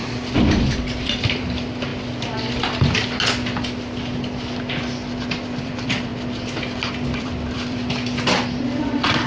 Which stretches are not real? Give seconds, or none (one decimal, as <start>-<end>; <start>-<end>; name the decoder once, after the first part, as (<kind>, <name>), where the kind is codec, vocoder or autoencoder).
0.0-1.9 (vocoder, BigVGAN v2); 5.6-6.1; 7.2-9.3